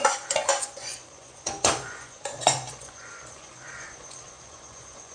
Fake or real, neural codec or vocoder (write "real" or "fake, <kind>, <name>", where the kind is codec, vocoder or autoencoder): fake, vocoder, Vocos